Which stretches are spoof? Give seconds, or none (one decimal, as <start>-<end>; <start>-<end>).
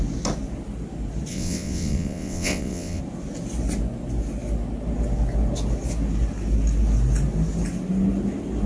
1.3-3.0